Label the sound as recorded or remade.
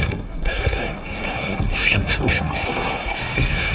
remade